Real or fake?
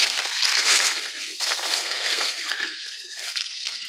fake